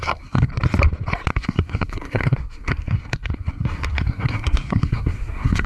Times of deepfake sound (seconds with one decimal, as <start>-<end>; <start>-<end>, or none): 0.0-0.5; 1.3-5.7